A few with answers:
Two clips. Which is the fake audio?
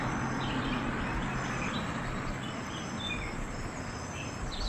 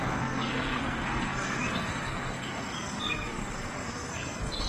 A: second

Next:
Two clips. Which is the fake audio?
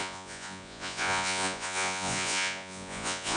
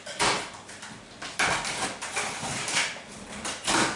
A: first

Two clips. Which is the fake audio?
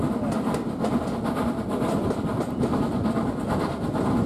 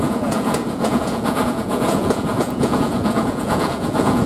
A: second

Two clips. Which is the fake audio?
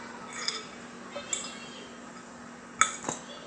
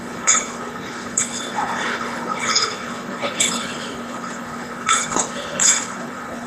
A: second